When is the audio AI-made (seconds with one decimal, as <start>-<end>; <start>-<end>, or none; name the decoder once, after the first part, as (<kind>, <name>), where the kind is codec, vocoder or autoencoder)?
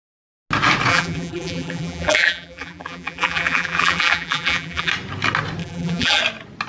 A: 0.9-4.9 (vocoder, BigVGAN v2); 5.6-6.2